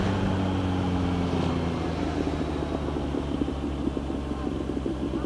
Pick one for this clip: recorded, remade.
recorded